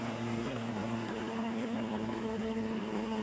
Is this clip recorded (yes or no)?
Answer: no